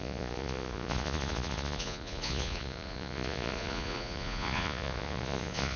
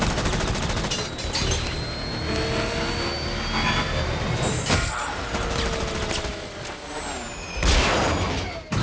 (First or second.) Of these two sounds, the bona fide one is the second